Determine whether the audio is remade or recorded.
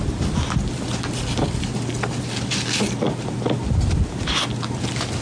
recorded